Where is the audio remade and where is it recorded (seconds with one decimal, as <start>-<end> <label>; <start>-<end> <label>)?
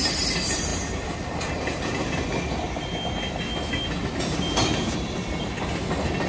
0.0-6.3 recorded